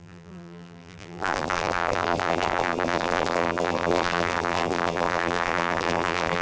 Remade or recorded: remade